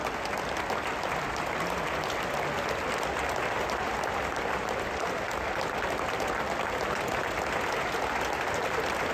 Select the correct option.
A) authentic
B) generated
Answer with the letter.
A